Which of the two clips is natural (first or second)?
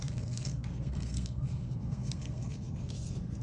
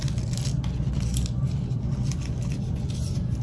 second